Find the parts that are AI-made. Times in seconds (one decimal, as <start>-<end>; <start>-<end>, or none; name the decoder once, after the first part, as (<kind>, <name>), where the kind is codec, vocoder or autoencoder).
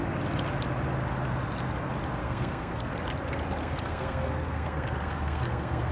2.2-2.9 (codec, SNAC); 3.6-5.9